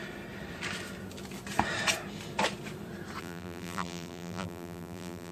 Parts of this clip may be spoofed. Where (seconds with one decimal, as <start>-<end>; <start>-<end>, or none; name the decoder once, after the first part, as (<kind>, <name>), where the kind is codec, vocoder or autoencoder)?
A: 3.2-5.3 (vocoder, BigVGAN v2)